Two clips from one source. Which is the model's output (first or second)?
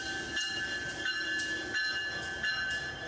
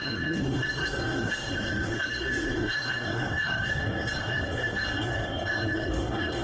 second